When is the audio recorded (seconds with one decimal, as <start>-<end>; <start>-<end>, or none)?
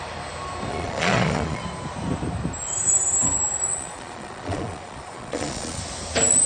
0.0-0.7; 1.6-3.7; 5.8-6.5